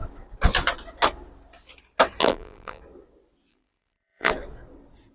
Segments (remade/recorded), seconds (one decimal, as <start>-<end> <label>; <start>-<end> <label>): 0.0-2.2 recorded; 2.2-2.8 remade; 2.8-3.5 recorded; 3.5-4.3 remade; 4.3-5.1 recorded